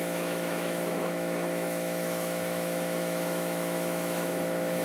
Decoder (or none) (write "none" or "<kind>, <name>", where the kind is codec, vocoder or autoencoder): autoencoder, DAC-VAE